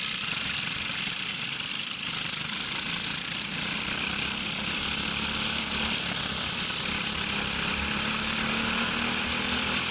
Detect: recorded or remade recorded